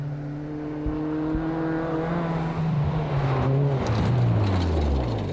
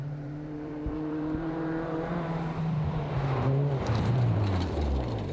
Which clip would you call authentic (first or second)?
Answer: first